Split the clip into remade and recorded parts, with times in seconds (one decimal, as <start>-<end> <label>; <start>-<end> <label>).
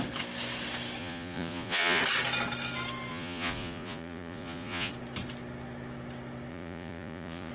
0.0-1.0 recorded; 1.0-2.0 remade; 2.0-3.1 recorded; 3.1-4.9 remade; 4.9-6.5 recorded; 6.5-7.5 remade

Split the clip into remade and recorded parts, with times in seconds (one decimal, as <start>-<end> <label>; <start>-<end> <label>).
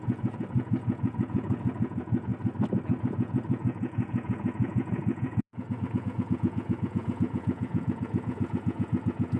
0.0-2.3 remade; 2.3-3.0 recorded; 3.0-9.4 remade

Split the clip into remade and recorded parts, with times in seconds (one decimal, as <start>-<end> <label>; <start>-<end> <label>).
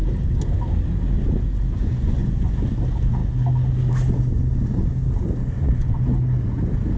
0.0-1.7 recorded; 1.7-2.5 remade; 2.5-5.4 recorded; 5.4-6.0 remade; 6.0-7.0 recorded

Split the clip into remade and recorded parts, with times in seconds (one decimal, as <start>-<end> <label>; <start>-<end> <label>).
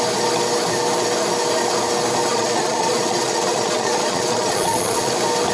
0.0-2.3 recorded; 2.3-5.1 remade; 5.1-5.5 recorded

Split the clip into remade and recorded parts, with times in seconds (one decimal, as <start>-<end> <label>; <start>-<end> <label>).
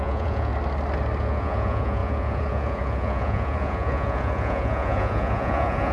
0.0-0.5 remade; 0.5-1.2 recorded; 1.2-5.9 remade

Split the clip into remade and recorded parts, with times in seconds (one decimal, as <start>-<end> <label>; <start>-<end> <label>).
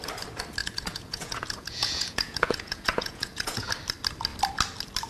0.0-0.6 recorded; 0.6-3.7 remade; 3.7-5.1 recorded